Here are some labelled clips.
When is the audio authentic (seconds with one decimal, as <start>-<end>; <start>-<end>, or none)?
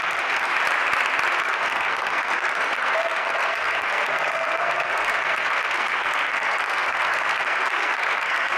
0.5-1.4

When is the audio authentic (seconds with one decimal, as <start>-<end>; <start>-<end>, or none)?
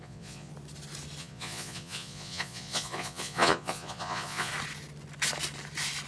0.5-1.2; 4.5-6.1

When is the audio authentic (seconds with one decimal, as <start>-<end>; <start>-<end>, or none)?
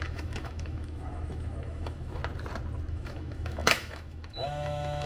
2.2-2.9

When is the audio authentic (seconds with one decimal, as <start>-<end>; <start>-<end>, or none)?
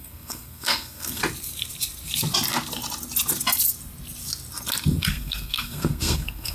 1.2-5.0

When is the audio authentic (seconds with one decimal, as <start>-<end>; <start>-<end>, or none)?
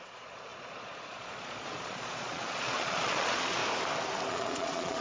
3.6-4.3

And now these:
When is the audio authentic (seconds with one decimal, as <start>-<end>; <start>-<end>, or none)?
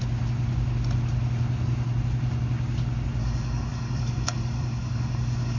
0.0-3.2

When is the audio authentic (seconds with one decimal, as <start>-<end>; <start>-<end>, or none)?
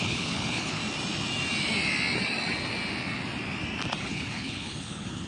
0.8-4.0